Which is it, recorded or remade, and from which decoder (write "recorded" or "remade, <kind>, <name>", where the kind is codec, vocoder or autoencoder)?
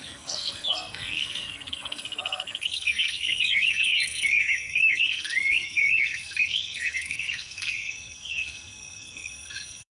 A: remade, codec, SNAC